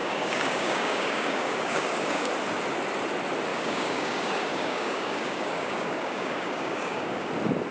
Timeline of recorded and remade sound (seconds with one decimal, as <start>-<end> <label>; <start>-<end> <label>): 0.0-2.3 remade; 2.3-3.5 recorded; 3.5-7.3 remade; 7.3-7.7 recorded

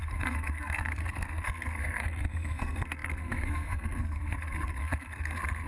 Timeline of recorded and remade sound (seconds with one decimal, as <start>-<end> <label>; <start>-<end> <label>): 0.0-5.7 remade

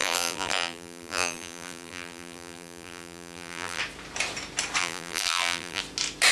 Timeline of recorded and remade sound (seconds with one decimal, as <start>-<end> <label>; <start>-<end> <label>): 0.0-3.8 remade; 3.8-4.8 recorded; 4.8-5.8 remade; 5.8-6.3 recorded

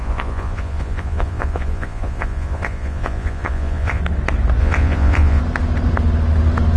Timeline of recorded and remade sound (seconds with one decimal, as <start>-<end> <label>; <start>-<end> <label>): 0.0-4.0 remade; 4.0-4.6 recorded; 4.6-5.4 remade; 5.4-6.8 recorded